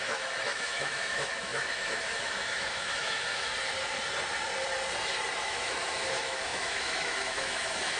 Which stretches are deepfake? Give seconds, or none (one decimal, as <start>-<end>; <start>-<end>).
0.0-3.5; 5.4-8.0

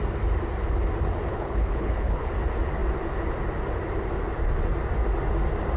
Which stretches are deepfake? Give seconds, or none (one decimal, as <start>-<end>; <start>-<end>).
1.3-2.3